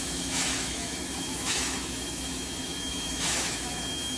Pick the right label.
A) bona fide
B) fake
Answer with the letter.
B